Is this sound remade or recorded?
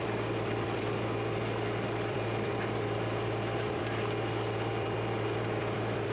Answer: remade